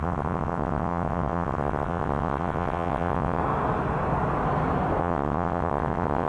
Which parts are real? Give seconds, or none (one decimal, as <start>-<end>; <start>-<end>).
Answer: 3.4-5.0